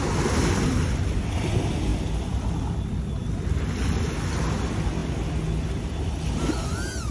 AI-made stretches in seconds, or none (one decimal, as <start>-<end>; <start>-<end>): none